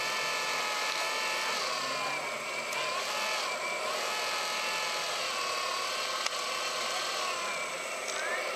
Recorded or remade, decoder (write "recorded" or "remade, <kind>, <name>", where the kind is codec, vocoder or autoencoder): recorded